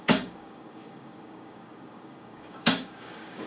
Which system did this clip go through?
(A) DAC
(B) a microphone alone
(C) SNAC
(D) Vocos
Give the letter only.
A